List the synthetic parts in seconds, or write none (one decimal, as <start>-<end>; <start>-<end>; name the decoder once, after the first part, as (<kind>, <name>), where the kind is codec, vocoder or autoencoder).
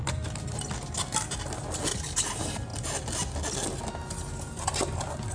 none